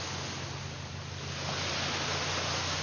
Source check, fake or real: real